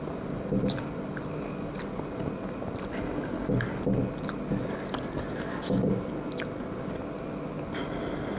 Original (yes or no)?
yes